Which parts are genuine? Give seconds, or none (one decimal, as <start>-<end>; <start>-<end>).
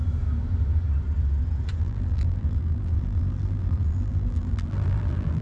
0.0-1.8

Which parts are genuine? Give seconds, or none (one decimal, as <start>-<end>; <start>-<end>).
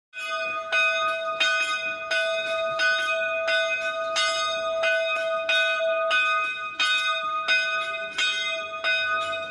0.0-9.5